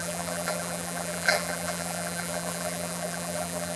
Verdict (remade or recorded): remade